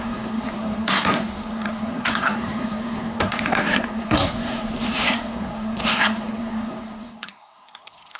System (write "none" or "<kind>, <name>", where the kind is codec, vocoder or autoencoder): codec, SNAC